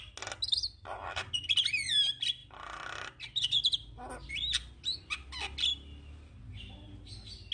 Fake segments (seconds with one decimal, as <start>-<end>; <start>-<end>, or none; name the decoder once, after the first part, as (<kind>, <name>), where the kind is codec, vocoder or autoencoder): none